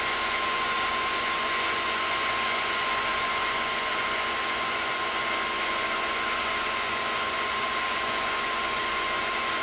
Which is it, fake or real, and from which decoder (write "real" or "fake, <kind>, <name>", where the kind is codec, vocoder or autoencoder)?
fake, vocoder, Vocos